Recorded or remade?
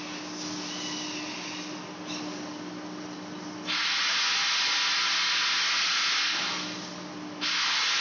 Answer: recorded